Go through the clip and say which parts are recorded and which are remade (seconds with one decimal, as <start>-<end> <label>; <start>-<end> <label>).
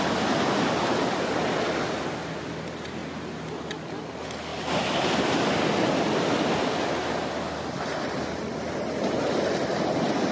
0.0-10.3 recorded